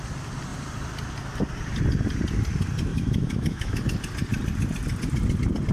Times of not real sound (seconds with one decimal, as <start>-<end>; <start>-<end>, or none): 2.9-3.8